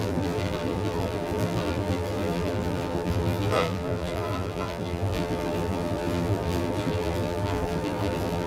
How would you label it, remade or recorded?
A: remade